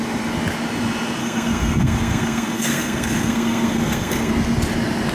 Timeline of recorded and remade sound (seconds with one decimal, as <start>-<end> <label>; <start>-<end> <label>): 0.0-1.2 recorded; 1.2-4.3 remade; 4.3-5.1 recorded